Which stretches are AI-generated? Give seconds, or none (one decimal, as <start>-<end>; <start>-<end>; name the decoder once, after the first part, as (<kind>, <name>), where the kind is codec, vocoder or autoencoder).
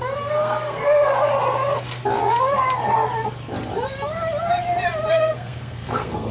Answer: 0.0-1.3 (codec, SNAC); 5.1-6.3